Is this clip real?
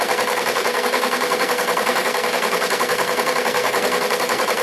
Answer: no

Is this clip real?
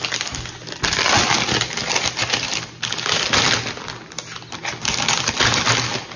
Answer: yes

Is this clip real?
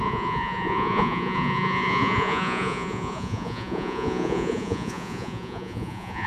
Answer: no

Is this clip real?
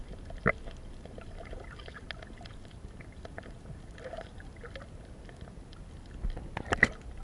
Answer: yes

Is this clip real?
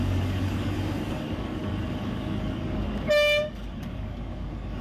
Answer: no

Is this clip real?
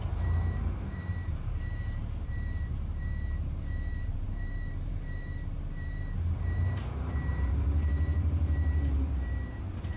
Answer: no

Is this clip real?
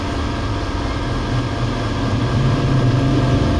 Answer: yes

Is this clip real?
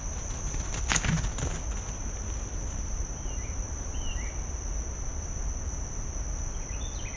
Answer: yes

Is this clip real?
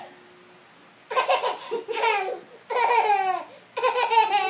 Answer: yes